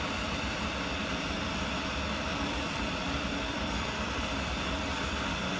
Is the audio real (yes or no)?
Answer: no